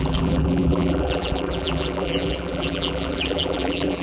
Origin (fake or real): fake